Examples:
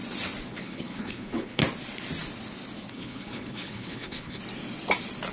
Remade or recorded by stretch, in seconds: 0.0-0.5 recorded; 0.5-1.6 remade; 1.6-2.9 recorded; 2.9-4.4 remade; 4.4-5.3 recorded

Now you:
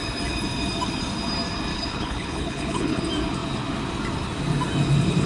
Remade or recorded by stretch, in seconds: 0.0-1.7 recorded; 1.7-3.0 remade; 3.0-5.3 recorded

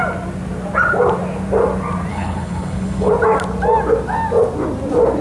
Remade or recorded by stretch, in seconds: 0.0-2.1 recorded; 2.1-3.1 remade; 3.1-5.2 recorded

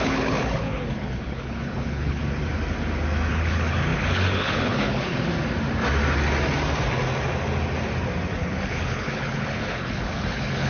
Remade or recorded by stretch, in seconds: 0.0-2.2 remade; 2.2-3.3 recorded; 3.3-5.3 remade; 5.3-8.4 recorded; 8.4-10.7 remade

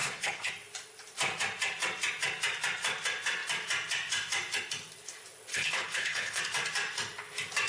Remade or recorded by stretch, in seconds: 0.0-0.5 remade; 0.5-5.5 recorded; 5.5-6.4 remade; 6.4-7.7 recorded

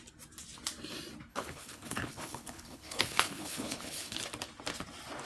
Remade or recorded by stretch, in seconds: 0.0-1.3 recorded; 1.3-4.2 remade; 4.2-5.3 recorded

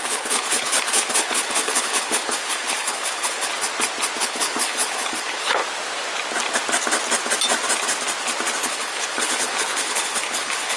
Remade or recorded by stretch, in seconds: 0.0-3.5 remade; 3.5-4.2 recorded; 4.2-5.6 remade; 5.6-8.6 recorded; 8.6-10.8 remade

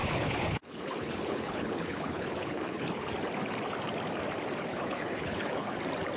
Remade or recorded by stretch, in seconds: 0.0-3.1 remade; 3.1-4.7 recorded; 4.7-5.8 remade; 5.8-6.2 recorded